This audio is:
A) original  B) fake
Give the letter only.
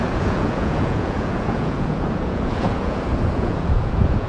B